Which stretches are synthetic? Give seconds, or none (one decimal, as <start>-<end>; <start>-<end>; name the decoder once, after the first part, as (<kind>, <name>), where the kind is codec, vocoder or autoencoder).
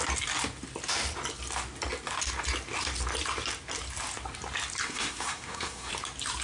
4.8-5.9 (codec, SNAC)